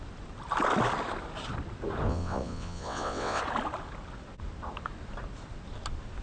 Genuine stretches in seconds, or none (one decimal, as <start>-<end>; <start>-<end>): 0.0-2.1; 3.4-6.2